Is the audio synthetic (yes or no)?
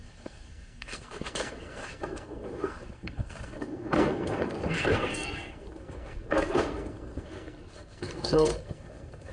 yes